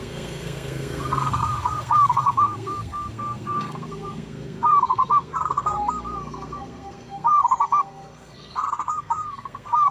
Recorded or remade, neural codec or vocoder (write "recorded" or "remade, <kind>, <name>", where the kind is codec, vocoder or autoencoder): remade, codec, SNAC